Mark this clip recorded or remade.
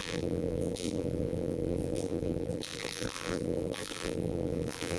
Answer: remade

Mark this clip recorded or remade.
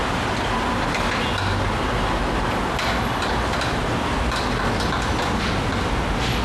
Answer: recorded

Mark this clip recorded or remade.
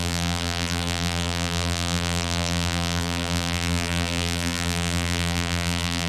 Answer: remade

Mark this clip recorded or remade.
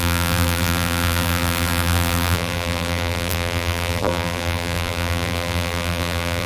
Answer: remade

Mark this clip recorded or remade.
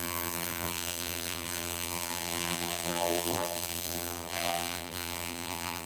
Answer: remade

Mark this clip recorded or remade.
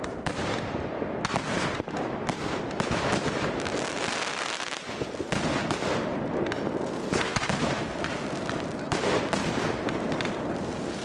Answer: recorded